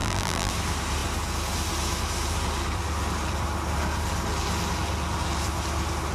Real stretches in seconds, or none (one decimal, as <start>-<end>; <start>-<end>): 0.5-6.1